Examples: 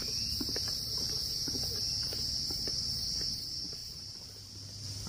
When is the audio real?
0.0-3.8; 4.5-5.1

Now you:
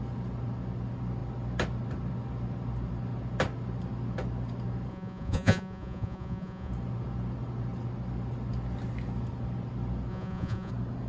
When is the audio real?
0.0-4.9; 6.7-10.1; 10.7-11.1

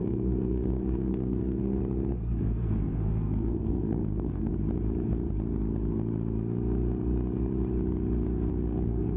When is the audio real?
1.8-2.4; 4.5-8.5

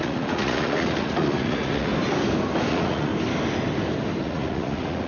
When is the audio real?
1.9-2.7; 3.1-4.2

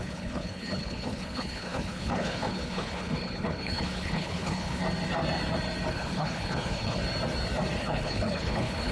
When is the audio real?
4.8-5.9; 7.0-7.8